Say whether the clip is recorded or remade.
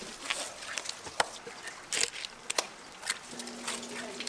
recorded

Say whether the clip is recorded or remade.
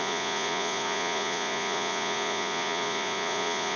remade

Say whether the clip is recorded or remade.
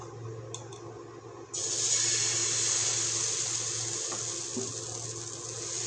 recorded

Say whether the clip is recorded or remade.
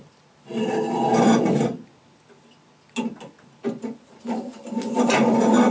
recorded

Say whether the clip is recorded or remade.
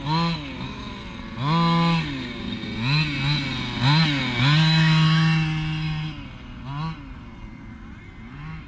recorded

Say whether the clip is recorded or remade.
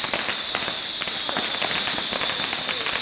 recorded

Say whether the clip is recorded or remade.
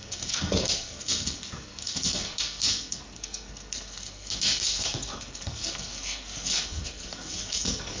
remade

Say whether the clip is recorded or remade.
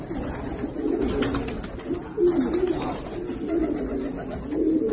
recorded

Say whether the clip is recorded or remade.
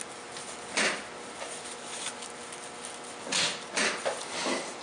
recorded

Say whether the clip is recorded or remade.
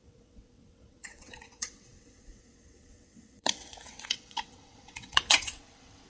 remade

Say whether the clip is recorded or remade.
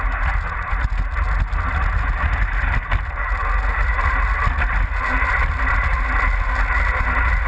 recorded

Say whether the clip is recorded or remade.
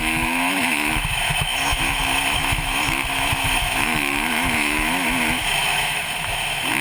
remade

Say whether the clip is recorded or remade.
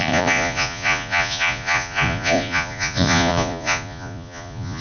remade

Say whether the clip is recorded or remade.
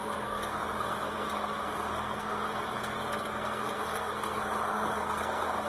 remade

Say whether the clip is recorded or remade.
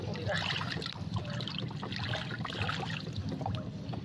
recorded